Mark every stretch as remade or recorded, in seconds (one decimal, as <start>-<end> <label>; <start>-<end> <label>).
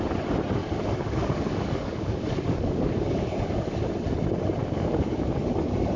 0.0-0.6 recorded; 0.6-3.9 remade; 3.9-4.6 recorded; 4.6-5.4 remade; 5.4-6.0 recorded